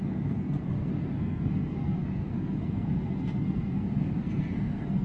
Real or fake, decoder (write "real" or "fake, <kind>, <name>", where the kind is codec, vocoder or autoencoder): fake, codec, SNAC